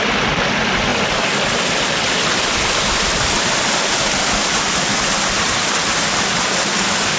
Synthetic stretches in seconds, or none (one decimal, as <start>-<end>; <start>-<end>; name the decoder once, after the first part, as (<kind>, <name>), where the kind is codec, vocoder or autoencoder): none